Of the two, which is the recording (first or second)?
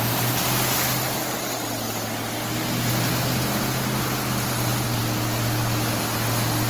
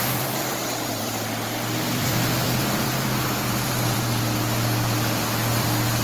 first